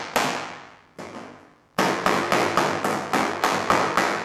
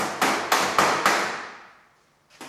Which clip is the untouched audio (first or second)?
second